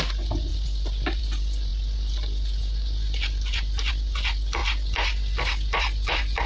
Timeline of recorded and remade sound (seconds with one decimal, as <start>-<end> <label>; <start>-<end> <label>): 0.0-6.5 recorded